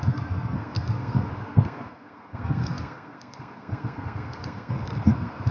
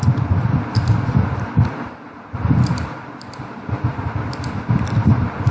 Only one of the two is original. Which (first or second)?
second